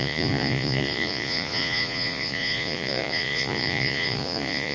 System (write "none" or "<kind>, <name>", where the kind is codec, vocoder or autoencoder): vocoder, Vocos